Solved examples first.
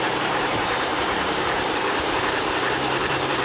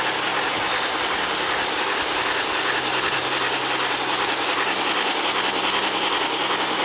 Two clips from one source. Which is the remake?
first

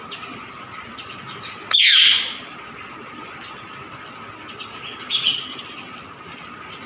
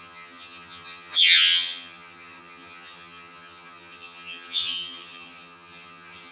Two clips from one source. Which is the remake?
second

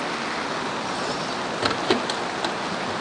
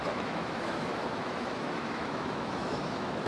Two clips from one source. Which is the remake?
second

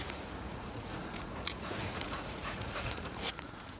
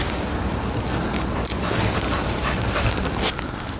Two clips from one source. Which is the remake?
first